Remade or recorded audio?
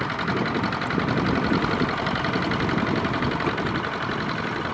recorded